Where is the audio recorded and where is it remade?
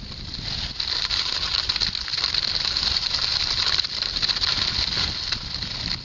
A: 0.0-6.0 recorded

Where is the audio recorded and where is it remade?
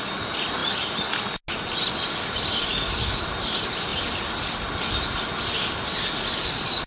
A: 0.0-6.9 recorded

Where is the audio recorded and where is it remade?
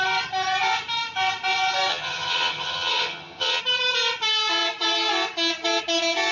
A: 0.0-1.9 recorded; 1.9-3.6 remade; 3.6-6.3 recorded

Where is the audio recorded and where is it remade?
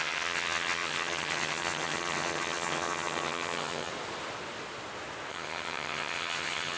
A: 0.0-3.9 remade; 3.9-5.3 recorded; 5.3-6.8 remade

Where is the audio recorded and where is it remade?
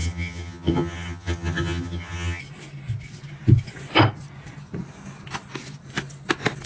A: 0.0-2.4 remade; 2.4-6.7 recorded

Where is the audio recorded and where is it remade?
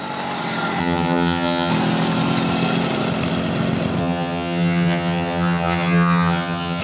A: 0.0-0.8 recorded; 0.8-1.7 remade; 1.7-4.0 recorded; 4.0-6.8 remade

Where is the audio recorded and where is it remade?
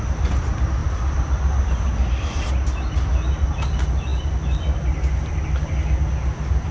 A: 0.0-6.7 recorded